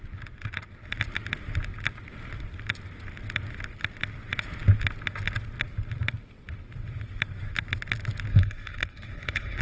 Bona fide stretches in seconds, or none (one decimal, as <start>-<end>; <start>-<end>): 0.0-8.3